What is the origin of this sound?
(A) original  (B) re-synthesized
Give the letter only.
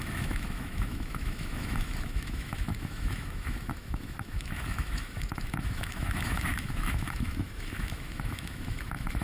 B